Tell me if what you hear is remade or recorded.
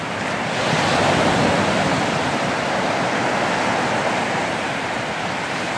recorded